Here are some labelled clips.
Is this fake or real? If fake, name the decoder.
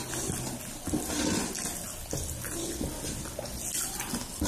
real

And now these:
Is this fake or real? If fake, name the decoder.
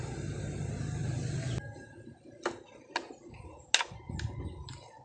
real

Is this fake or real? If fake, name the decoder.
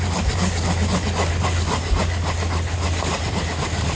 real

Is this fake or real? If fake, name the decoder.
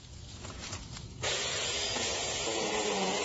fake, vocoder, Vocos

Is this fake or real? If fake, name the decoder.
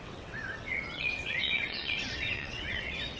fake, vocoder, WaveNeXt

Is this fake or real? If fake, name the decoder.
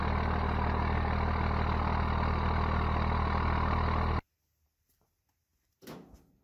real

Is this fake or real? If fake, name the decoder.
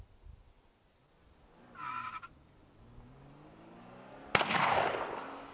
real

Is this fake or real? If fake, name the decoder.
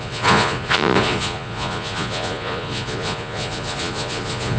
fake, vocoder, Vocos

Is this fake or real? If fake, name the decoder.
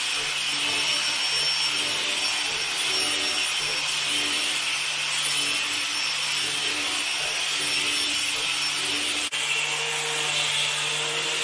real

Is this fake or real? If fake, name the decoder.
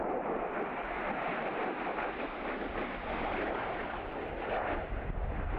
real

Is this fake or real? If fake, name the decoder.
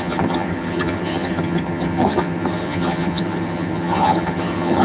fake, vocoder, HiFi-GAN